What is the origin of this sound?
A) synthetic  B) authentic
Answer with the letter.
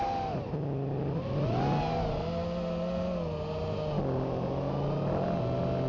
B